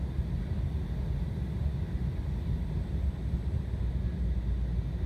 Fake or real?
real